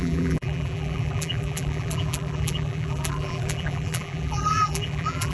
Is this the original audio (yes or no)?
no